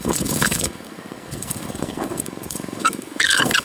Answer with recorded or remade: remade